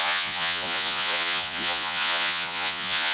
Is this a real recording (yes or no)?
no